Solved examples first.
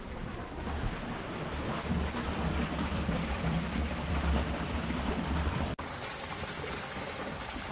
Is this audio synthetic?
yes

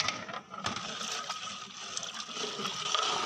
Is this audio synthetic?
no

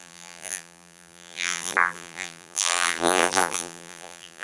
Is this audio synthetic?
yes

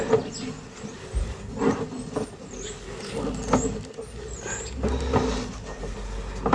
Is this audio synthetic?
no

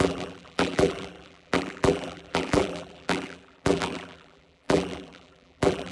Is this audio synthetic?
yes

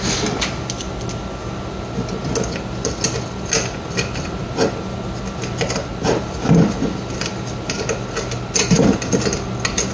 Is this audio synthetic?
no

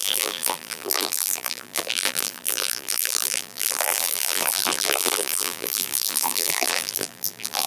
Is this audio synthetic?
yes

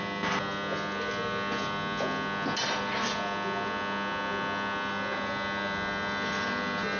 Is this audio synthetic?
no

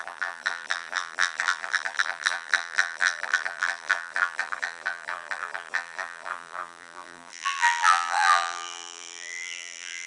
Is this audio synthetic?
yes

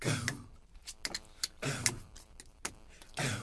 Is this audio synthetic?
no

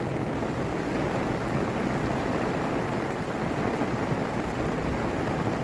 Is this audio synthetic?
no